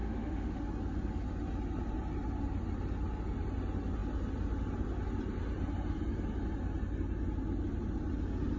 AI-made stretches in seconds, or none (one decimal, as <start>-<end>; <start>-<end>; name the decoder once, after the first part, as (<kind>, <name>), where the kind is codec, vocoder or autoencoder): 0.0-0.6 (autoencoder, DAC-VAE)